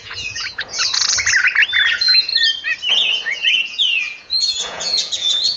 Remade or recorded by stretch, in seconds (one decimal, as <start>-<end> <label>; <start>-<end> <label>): 0.0-0.8 remade; 0.8-1.9 recorded; 1.9-2.3 remade; 2.3-2.9 recorded; 2.9-5.6 remade